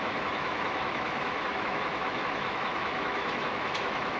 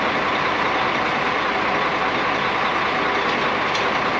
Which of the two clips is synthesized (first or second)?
first